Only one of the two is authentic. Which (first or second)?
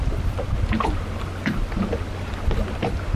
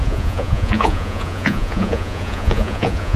first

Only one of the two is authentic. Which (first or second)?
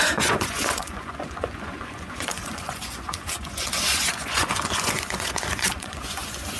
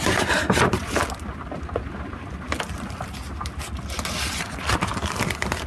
second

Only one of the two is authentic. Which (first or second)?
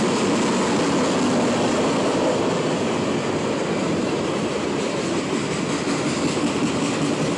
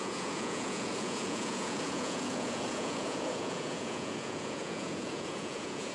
first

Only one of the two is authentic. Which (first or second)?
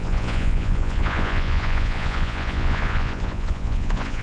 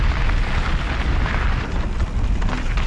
second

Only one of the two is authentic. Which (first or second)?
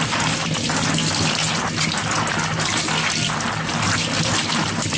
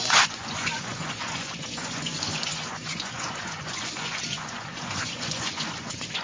first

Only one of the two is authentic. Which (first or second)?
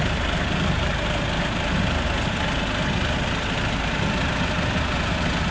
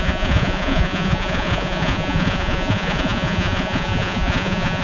first